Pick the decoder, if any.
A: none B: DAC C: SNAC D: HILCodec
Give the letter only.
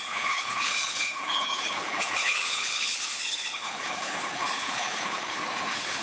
D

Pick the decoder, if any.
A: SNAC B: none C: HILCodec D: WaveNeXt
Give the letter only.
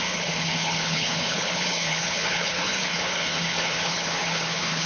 C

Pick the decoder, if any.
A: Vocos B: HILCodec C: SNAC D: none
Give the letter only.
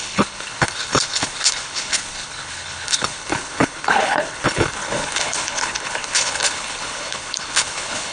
B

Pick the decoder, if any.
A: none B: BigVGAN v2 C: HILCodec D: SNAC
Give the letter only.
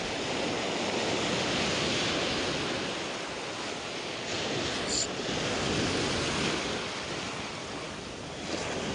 A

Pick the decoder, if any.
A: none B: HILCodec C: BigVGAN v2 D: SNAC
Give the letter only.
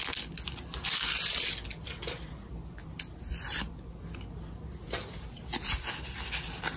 A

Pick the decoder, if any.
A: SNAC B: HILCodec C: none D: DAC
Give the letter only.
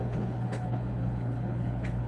B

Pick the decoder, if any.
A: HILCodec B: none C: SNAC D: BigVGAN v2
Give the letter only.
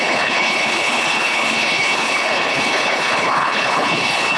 A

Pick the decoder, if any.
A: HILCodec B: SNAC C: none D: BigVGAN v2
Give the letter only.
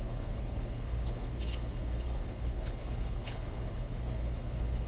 A